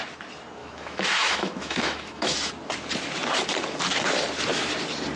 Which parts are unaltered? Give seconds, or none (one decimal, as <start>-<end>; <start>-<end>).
0.0-0.6; 2.5-5.2